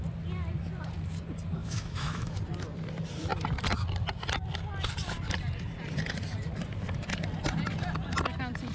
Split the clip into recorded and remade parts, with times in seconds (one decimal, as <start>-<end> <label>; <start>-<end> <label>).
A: 0.0-1.6 recorded; 1.6-2.4 remade; 2.4-8.7 recorded